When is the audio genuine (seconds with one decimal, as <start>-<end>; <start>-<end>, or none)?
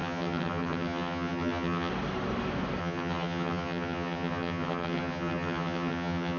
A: 1.9-2.8